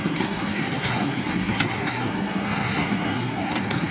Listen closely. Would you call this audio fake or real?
fake